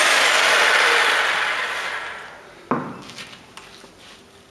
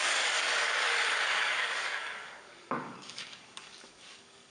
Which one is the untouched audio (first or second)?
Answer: first